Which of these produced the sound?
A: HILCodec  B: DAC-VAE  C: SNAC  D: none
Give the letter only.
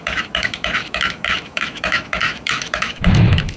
B